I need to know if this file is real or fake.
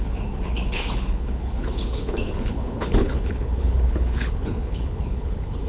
fake